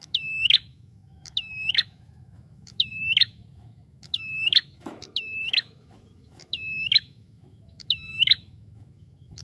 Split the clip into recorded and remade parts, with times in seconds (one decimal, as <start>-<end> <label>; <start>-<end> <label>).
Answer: 0.0-9.4 remade